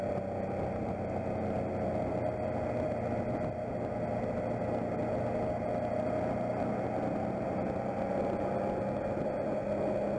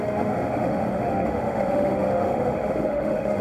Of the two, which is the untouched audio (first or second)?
first